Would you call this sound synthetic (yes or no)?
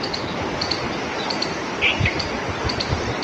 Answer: no